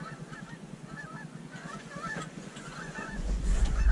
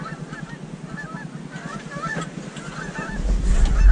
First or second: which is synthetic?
first